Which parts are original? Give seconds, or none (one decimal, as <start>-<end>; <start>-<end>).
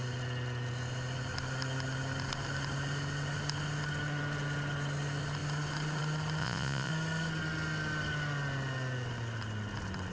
0.0-6.4; 6.9-10.1